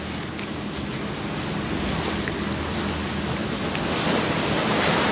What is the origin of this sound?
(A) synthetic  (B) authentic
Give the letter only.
B